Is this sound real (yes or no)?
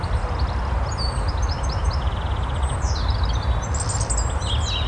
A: yes